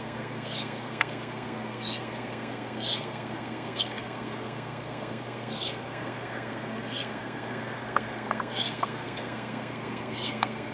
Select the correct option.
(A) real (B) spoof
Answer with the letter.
B